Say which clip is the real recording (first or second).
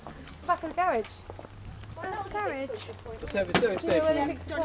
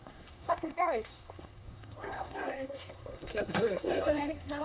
first